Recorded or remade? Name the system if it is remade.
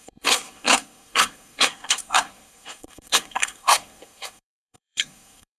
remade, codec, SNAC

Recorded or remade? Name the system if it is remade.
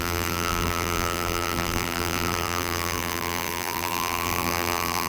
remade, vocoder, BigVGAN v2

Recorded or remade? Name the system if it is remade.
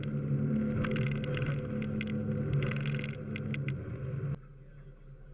recorded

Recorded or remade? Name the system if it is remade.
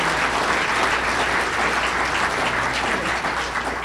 recorded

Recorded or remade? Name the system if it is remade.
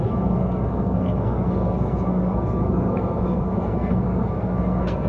remade, codec, SNAC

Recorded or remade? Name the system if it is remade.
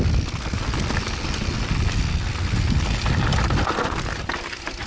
recorded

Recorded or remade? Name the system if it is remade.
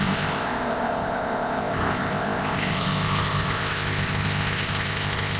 remade, codec, ZipCodec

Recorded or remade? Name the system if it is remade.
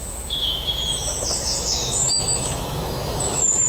remade, autoencoder, DAC-VAE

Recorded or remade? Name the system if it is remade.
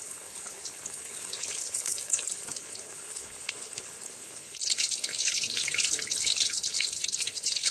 remade, codec, HILCodec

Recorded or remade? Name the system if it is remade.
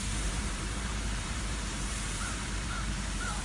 remade, vocoder, BigVGAN v2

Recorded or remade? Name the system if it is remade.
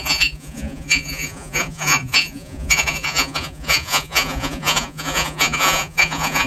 remade, vocoder, Vocos